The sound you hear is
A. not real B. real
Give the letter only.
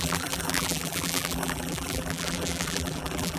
A